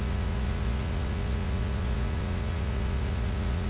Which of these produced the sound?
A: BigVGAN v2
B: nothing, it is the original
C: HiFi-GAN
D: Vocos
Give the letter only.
D